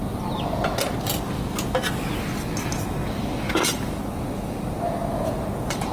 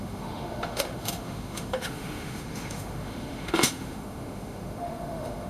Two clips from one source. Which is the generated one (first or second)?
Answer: second